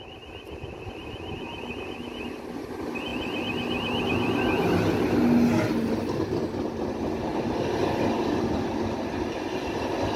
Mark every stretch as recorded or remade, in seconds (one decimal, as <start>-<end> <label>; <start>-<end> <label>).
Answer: 0.0-10.2 recorded